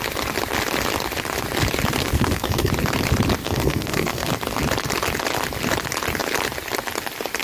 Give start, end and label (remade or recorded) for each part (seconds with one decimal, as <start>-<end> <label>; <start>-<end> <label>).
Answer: 0.0-2.0 recorded; 2.0-2.7 remade; 2.7-3.4 recorded; 3.4-4.3 remade; 4.3-7.4 recorded